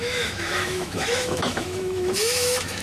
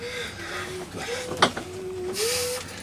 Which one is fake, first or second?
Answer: first